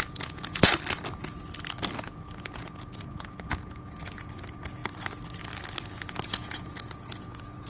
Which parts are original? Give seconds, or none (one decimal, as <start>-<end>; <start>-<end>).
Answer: 0.7-2.0; 4.8-6.2